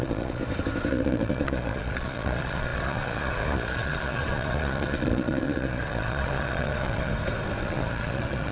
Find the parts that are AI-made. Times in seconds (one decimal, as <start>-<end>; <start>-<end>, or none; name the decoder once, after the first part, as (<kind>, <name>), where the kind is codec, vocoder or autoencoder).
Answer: 0.0-0.4 (vocoder, Vocos); 0.9-7.1; 7.6-8.5